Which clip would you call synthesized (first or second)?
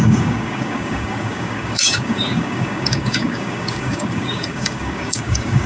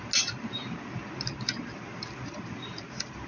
first